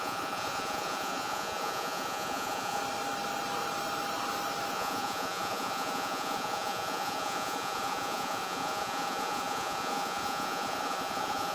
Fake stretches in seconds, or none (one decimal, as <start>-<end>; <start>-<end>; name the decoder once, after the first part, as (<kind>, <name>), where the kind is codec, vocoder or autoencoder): 0.0-2.8 (vocoder, Vocos); 4.7-11.5